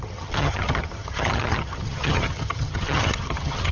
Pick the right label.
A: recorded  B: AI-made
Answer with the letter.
B